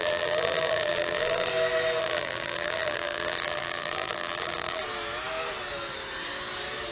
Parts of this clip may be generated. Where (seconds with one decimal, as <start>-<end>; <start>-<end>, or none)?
0.0-1.5; 2.0-4.8